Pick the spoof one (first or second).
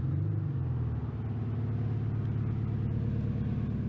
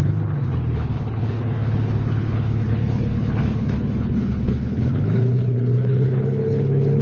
second